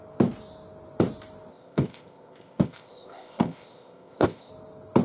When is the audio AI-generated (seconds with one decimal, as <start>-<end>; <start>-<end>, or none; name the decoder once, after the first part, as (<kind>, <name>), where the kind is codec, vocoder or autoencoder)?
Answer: 1.5-4.5 (codec, ZipCodec)

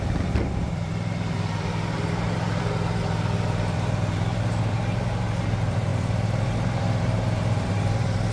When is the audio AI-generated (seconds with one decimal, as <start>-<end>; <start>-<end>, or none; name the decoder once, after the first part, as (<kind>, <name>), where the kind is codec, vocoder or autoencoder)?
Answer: 0.0-8.3 (vocoder, BigVGAN v2)